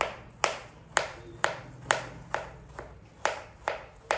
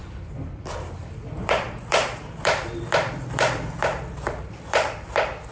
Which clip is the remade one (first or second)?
second